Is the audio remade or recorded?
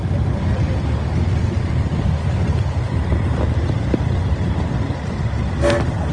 recorded